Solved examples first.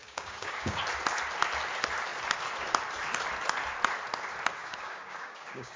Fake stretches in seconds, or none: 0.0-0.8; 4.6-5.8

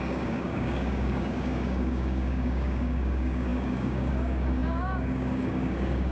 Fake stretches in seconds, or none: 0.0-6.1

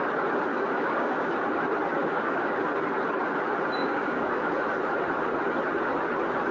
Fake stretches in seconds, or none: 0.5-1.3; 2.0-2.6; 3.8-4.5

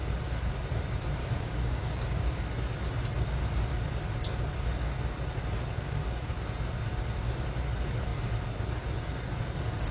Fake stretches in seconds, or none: 1.2-2.4

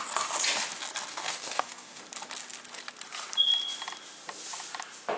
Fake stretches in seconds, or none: 1.1-2.0